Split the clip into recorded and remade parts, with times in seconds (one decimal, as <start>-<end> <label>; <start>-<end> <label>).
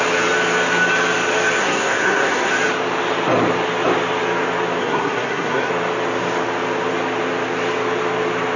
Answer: 0.0-1.6 recorded; 1.6-2.5 remade; 2.5-4.8 recorded; 4.8-5.7 remade; 5.7-8.6 recorded